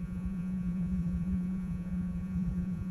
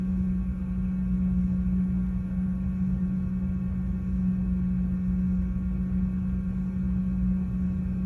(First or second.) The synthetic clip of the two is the first